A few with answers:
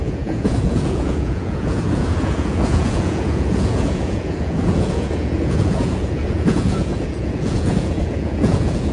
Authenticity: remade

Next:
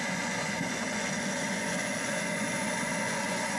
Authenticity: remade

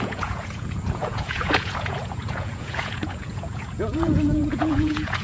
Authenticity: remade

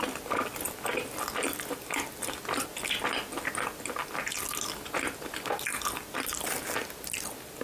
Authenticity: recorded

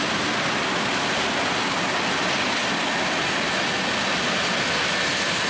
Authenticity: recorded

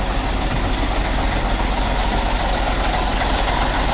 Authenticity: recorded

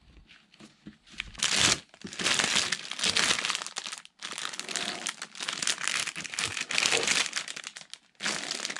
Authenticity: recorded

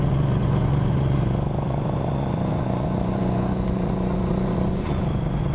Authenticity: remade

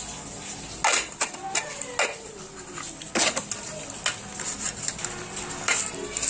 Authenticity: recorded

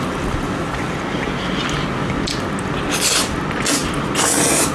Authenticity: recorded